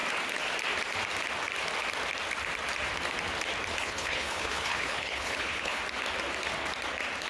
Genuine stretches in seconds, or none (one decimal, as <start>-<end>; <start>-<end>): 0.0-3.8; 5.8-7.3